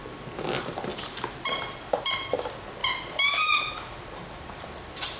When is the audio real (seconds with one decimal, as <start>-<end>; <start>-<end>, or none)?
0.0-5.2